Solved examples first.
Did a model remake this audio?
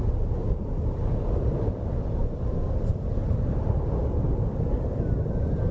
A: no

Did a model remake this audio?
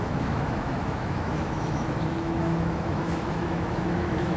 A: yes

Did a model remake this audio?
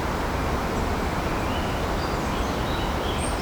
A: no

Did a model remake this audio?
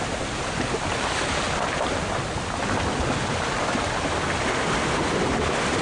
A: no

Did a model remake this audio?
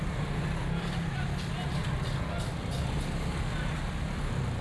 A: no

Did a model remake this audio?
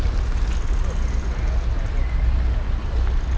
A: no